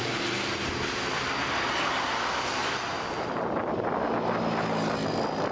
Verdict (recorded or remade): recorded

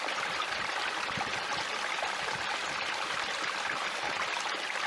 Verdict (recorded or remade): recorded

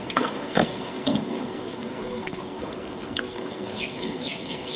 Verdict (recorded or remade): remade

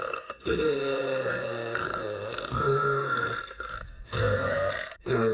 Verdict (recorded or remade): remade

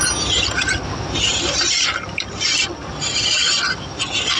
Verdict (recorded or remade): recorded